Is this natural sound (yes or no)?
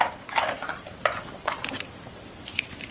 no